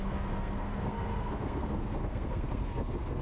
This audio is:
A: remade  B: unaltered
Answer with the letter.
A